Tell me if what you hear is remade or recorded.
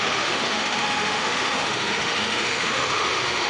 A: remade